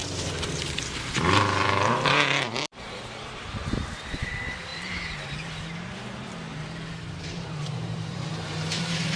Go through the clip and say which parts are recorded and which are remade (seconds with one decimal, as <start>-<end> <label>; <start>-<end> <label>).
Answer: 0.0-4.7 remade; 4.7-7.3 recorded; 7.3-9.2 remade